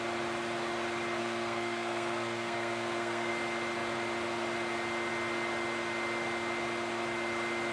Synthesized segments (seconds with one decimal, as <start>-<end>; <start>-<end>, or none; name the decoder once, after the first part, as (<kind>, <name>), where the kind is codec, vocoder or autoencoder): 1.2-3.3 (codec, SNAC)